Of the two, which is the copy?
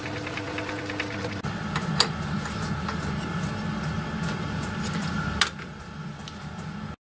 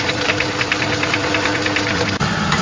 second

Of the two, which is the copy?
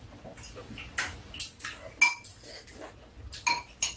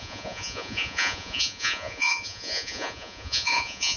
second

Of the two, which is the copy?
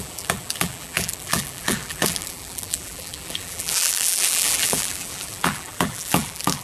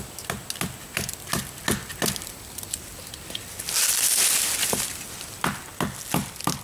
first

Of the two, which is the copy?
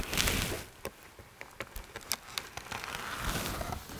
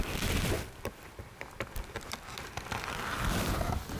second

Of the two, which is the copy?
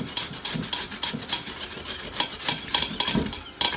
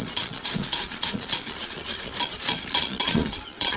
second